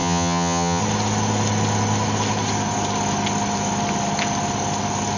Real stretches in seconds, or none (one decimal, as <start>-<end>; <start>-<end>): 0.8-5.2